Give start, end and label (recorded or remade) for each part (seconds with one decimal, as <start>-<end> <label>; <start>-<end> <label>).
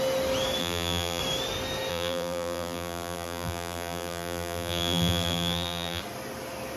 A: 0.0-0.6 recorded; 0.6-1.2 remade; 1.2-1.9 recorded; 1.9-6.0 remade; 6.0-6.8 recorded